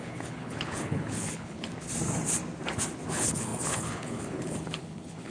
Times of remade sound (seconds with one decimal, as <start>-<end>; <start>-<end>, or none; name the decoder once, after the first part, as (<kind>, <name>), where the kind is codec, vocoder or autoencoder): 0.0-1.7 (codec, HILCodec); 3.1-5.3